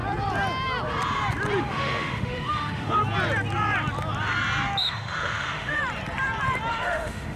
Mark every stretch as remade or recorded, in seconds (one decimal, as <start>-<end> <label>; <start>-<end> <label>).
0.0-1.6 recorded; 1.6-3.0 remade; 3.0-4.8 recorded; 4.8-5.8 remade; 5.8-6.7 recorded; 6.7-7.4 remade